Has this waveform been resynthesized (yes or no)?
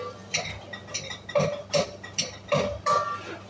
no